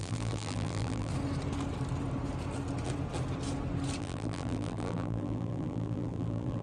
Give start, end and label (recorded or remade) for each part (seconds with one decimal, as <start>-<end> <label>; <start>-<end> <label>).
0.0-1.1 remade; 1.1-4.0 recorded; 4.0-6.6 remade